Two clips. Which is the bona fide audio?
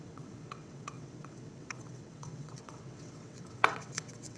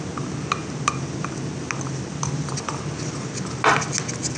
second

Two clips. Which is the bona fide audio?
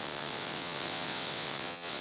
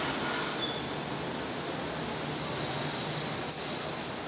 second